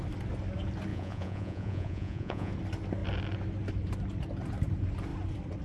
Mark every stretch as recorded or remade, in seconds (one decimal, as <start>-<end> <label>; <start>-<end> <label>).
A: 0.0-0.9 recorded; 0.9-2.5 remade; 2.5-5.6 recorded